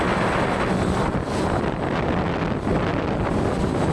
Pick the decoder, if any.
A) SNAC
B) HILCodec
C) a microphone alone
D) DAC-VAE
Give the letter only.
C